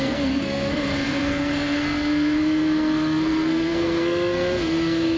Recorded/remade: remade